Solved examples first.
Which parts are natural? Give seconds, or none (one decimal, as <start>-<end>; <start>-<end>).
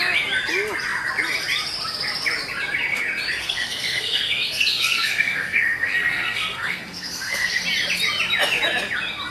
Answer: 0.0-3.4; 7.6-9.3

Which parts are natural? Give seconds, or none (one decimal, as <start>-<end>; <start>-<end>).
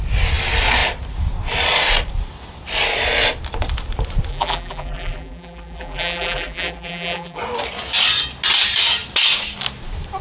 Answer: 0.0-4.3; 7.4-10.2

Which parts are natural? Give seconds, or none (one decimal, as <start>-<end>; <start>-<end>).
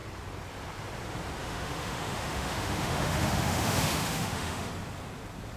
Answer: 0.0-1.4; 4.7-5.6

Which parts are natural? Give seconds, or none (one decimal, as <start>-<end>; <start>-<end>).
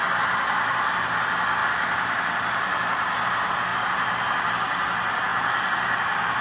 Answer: 0.0-1.6; 3.1-3.7; 4.5-5.3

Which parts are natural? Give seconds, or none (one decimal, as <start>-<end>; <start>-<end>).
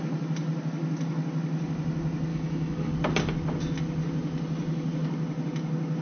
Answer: 0.0-2.3; 2.9-6.0